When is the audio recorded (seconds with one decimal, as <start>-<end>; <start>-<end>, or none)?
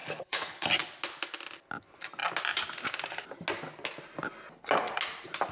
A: 0.7-5.5